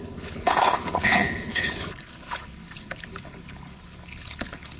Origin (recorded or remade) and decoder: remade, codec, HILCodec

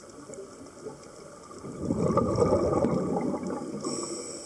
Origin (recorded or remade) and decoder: recorded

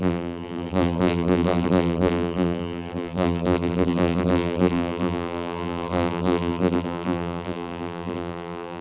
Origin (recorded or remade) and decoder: remade, vocoder, BigVGAN v2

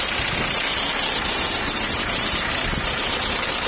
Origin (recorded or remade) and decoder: recorded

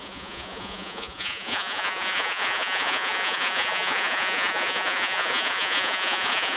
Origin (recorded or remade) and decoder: remade, vocoder, Vocos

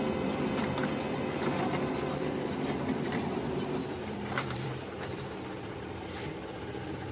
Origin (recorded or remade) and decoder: remade, vocoder, BigVGAN v2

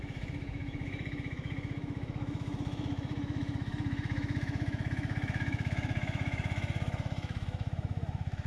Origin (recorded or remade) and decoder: remade, autoencoder, DAC-VAE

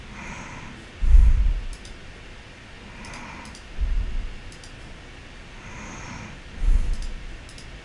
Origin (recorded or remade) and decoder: recorded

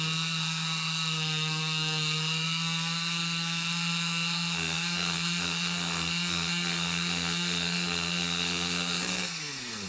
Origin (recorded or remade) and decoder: remade, codec, SNAC